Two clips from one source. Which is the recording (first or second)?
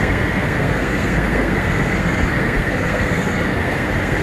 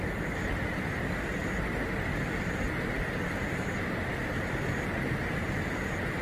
second